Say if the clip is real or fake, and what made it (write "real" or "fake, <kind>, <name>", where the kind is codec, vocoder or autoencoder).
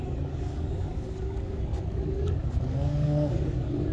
fake, codec, DAC